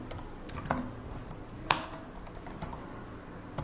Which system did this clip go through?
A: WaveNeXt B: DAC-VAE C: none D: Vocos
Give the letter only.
C